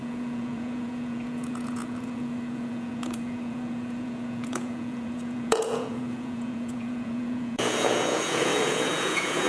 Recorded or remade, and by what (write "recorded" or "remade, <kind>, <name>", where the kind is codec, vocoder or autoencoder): remade, vocoder, Vocos